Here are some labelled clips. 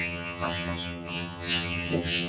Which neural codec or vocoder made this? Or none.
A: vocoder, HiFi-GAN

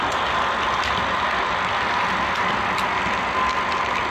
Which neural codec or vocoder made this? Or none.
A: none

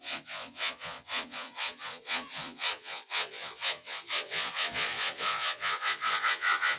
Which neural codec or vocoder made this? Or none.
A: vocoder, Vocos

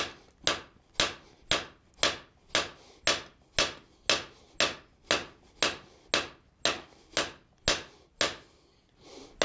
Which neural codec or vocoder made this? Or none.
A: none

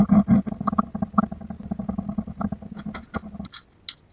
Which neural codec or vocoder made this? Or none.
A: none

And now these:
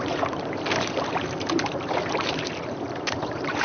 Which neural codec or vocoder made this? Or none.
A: vocoder, BigVGAN v2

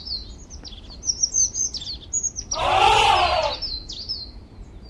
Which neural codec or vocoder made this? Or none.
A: none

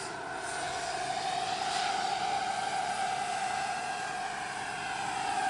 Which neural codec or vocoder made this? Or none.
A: none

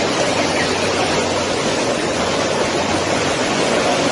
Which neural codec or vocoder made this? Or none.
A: vocoder, Vocos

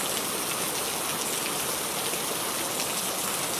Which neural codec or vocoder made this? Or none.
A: none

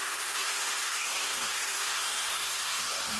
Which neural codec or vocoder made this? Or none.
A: codec, SNAC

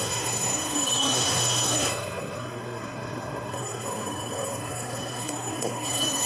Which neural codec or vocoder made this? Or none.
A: codec, SNAC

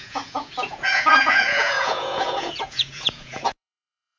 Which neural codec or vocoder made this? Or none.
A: vocoder, Vocos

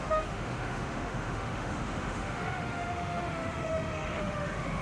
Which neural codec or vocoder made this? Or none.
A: autoencoder, DAC-VAE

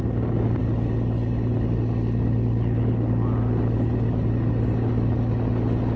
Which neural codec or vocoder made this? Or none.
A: none